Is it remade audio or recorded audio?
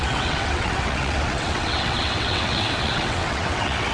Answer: remade